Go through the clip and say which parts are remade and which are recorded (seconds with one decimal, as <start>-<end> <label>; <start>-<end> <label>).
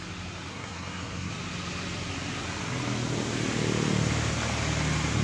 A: 0.0-0.5 recorded; 0.5-1.3 remade; 1.3-5.2 recorded